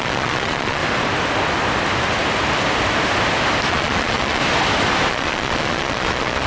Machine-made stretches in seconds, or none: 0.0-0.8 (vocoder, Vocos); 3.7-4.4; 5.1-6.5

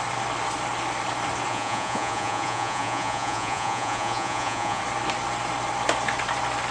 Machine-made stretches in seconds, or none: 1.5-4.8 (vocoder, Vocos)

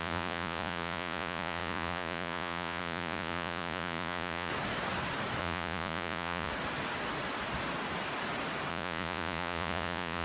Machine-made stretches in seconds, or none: 0.0-4.5 (vocoder, Vocos); 5.4-6.5; 8.7-10.2

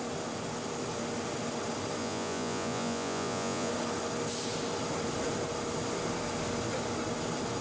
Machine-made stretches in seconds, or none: 2.0-3.7 (vocoder, Vocos)

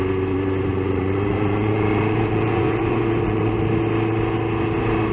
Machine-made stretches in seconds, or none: 0.7-3.7 (vocoder, Vocos)